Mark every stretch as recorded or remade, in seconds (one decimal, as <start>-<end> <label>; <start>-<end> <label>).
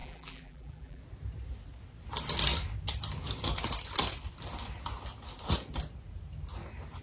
0.0-1.0 remade; 1.0-7.0 recorded